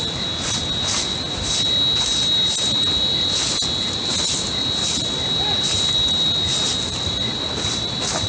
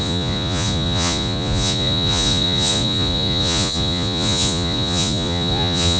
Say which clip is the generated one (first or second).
second